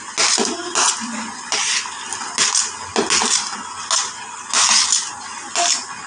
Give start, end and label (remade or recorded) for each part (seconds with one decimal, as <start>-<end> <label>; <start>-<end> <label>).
0.0-6.1 recorded